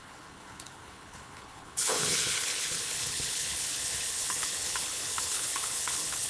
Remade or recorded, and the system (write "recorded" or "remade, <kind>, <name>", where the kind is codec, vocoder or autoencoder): remade, codec, HILCodec